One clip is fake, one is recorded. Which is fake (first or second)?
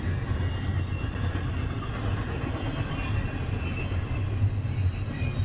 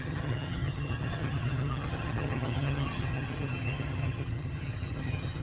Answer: second